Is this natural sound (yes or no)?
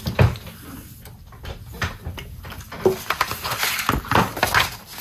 yes